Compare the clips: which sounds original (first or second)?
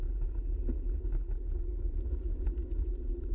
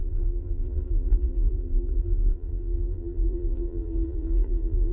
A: first